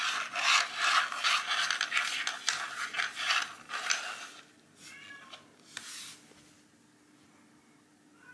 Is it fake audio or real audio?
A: real